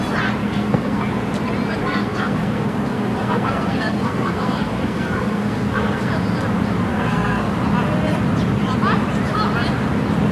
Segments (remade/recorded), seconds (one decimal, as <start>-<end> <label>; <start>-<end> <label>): 0.0-0.4 recorded; 0.4-1.1 remade; 1.1-1.8 recorded; 1.8-6.1 remade; 6.1-6.9 recorded; 6.9-7.5 remade; 7.5-10.3 recorded